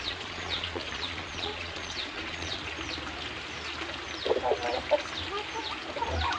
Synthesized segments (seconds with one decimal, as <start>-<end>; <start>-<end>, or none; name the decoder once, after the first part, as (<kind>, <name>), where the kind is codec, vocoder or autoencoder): 0.0-2.6 (vocoder, Vocos)